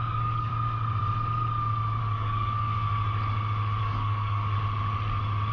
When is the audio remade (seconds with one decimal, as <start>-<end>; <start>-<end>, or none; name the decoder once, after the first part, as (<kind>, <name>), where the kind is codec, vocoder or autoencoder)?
0.0-0.5 (codec, DAC); 2.0-2.9; 3.8-4.5